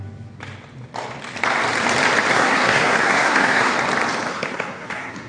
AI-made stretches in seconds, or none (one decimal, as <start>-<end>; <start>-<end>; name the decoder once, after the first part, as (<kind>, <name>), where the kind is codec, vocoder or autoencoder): 2.3-3.7 (codec, SNAC); 4.3-5.3